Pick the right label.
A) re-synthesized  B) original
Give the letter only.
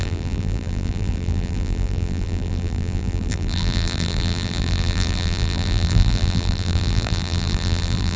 A